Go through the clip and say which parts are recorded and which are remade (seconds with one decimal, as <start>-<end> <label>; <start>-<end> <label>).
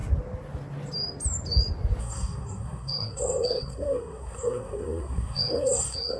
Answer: 0.0-2.0 recorded; 2.0-6.2 remade